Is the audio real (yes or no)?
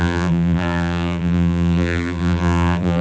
no